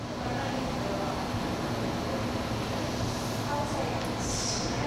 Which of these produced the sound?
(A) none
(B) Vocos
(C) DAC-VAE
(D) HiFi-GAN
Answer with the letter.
A